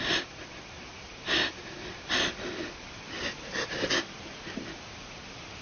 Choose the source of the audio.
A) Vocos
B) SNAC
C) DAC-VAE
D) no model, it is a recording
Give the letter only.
D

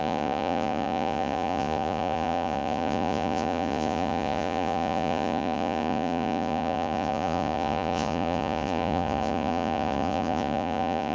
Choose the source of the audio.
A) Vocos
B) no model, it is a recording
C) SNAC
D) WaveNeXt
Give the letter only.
A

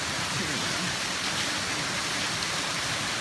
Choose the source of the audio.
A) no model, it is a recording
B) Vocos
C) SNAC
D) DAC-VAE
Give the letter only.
A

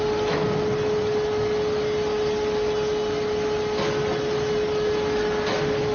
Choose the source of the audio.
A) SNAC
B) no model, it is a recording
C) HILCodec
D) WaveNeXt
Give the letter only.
B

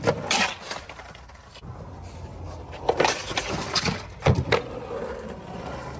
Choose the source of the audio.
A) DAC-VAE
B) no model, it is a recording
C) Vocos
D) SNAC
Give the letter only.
B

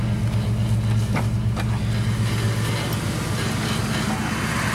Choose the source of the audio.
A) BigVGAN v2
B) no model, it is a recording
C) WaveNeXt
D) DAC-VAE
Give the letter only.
B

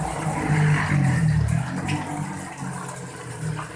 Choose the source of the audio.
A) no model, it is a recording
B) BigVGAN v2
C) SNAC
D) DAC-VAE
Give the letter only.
A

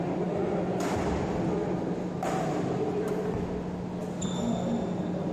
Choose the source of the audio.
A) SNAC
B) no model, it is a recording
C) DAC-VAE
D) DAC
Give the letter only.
B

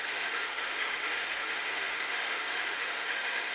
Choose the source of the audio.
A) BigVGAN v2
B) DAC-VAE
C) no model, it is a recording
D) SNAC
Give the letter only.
B